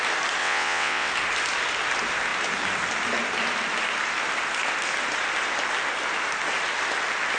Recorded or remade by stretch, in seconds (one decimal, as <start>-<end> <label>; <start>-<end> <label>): 0.0-0.4 recorded; 0.4-1.1 remade; 1.1-7.4 recorded